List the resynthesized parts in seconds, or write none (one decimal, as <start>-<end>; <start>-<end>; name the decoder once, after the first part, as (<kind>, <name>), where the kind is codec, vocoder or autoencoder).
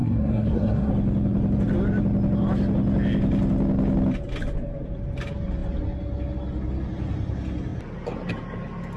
0.0-0.9 (codec, SNAC)